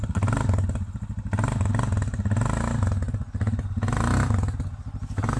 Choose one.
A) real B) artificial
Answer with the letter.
A